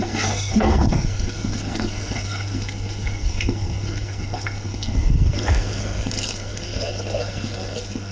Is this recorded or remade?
remade